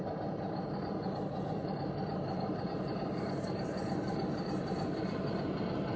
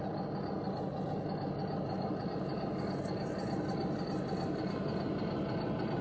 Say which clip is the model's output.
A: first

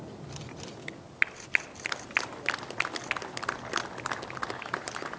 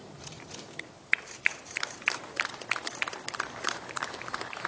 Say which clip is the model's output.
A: second